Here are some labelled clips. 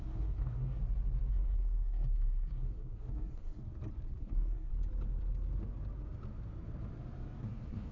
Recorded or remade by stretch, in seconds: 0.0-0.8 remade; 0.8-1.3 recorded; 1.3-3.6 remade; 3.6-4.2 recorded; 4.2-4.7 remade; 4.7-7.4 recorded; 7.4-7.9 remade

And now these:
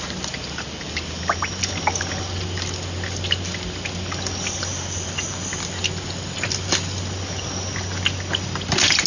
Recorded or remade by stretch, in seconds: 0.0-9.1 recorded

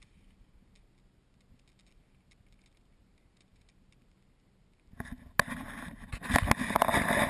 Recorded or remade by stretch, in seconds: 0.0-7.3 recorded

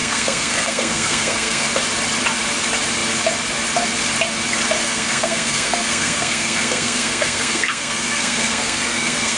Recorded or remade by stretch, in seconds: 0.0-1.7 remade; 1.7-4.8 recorded; 4.8-9.4 remade

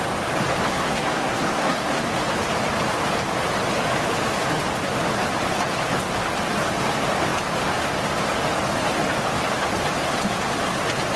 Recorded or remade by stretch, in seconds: 0.0-0.7 recorded; 0.7-2.0 remade; 2.0-11.2 recorded

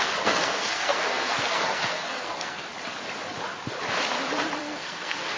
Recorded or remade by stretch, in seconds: 0.0-2.7 remade; 2.7-4.6 recorded; 4.6-5.4 remade

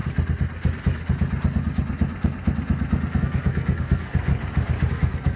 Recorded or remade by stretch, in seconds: 0.0-3.2 recorded; 3.2-4.3 remade; 4.3-4.9 recorded; 4.9-5.4 remade